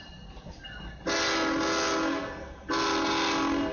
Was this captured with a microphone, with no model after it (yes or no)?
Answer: yes